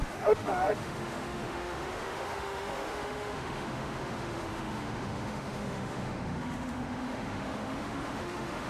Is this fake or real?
fake